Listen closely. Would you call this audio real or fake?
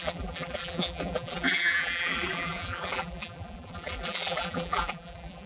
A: fake